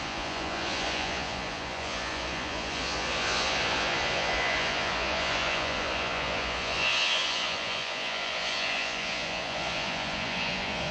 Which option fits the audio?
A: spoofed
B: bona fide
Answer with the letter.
A